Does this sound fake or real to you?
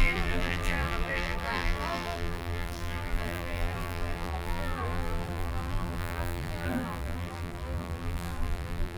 fake